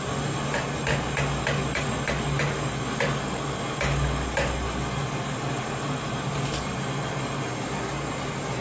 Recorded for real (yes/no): yes